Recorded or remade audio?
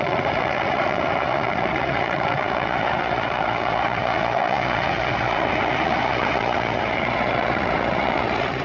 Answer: remade